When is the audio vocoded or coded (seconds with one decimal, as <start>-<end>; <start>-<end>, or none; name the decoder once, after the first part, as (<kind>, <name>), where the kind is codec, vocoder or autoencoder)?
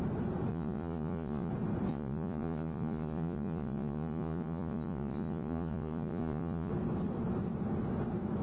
0.5-1.5 (vocoder, Vocos); 1.9-6.7